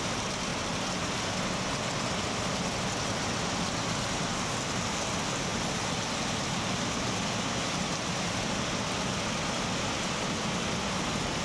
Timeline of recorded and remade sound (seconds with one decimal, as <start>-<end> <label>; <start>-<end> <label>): 0.0-11.4 recorded